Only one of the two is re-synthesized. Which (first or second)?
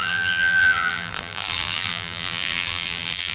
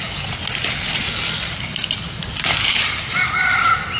first